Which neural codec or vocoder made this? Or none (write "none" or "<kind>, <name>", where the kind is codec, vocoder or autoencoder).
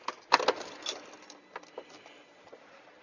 none